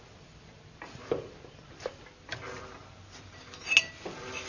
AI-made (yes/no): no